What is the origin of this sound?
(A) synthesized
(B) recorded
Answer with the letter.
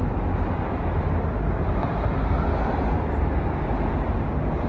B